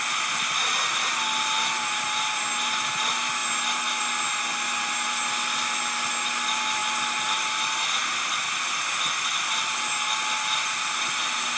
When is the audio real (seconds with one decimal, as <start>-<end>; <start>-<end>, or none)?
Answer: 0.0-11.6